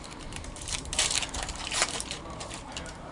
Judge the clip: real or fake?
fake